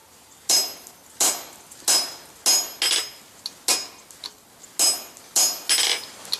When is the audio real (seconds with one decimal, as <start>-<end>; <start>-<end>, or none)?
0.0-6.4